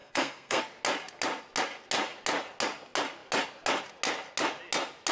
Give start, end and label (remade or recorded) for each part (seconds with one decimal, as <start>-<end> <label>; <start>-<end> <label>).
0.0-0.6 remade; 0.6-5.1 recorded